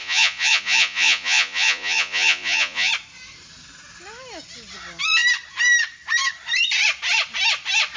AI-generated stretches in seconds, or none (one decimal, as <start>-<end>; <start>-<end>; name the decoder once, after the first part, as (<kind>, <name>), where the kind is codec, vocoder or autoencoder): 0.0-2.9 (vocoder, Vocos)